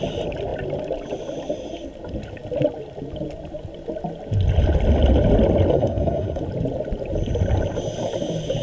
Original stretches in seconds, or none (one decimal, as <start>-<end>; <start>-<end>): 0.0-5.7; 6.4-8.6